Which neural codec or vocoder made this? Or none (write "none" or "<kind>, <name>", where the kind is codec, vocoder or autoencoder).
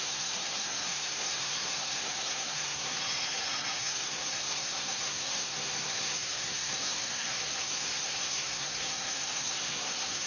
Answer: codec, SNAC